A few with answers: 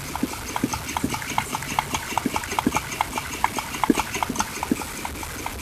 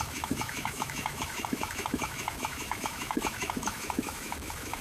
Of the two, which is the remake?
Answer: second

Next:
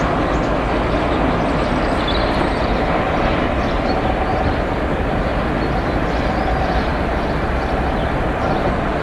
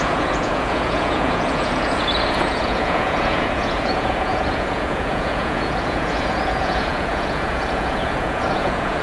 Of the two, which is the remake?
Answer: second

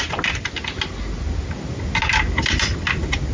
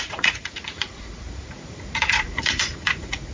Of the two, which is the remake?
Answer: second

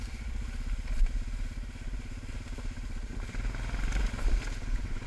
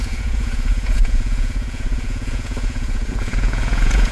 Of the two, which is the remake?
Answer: second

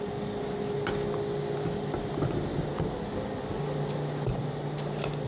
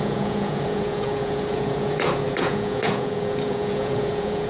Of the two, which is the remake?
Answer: second